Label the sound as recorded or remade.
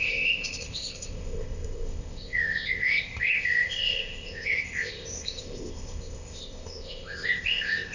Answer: remade